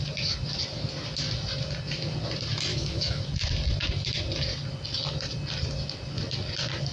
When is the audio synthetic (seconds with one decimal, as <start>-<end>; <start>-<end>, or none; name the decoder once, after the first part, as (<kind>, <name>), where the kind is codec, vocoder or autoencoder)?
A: 2.7-3.2 (autoencoder, DAC-VAE)

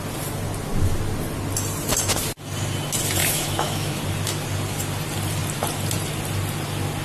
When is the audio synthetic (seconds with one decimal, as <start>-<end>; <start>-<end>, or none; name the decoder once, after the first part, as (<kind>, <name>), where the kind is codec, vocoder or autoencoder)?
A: 3.2-4.0 (autoencoder, DAC-VAE)

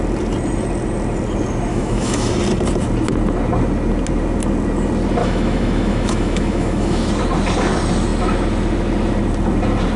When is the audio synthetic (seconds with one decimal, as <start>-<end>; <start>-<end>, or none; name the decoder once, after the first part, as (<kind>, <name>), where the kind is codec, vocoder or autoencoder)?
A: 1.7-2.3 (autoencoder, DAC-VAE); 5.2-7.1

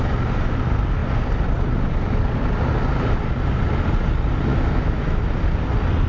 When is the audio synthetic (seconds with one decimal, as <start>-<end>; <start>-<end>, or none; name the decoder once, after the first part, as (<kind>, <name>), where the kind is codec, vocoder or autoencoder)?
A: 4.5-5.2 (autoencoder, DAC-VAE)

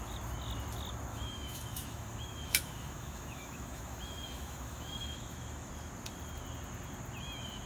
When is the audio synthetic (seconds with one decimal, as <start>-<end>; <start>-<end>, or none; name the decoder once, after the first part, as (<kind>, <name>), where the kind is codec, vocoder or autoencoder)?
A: 1.1-5.7 (autoencoder, DAC-VAE)

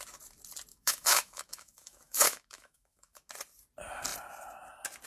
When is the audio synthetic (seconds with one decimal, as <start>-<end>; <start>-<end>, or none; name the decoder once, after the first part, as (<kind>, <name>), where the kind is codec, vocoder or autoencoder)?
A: 0.7-3.3 (autoencoder, DAC-VAE)

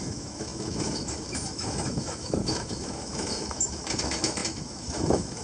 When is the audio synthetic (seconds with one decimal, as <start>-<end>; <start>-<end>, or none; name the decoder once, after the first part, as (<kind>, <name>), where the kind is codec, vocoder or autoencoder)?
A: 0.0-5.4 (autoencoder, DAC-VAE)